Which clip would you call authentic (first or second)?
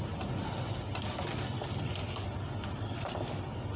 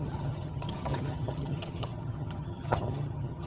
first